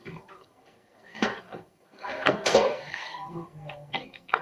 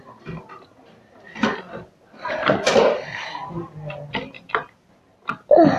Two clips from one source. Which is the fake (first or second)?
first